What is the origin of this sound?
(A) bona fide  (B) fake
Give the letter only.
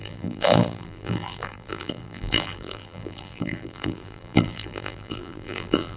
B